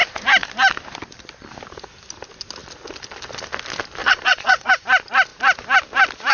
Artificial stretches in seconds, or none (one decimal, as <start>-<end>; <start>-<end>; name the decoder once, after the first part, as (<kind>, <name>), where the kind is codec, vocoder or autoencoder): 4.0-4.7 (vocoder, Vocos)